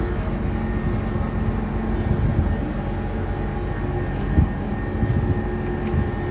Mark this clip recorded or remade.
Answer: recorded